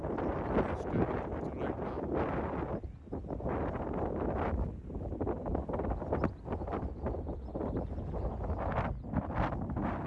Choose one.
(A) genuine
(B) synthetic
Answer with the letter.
A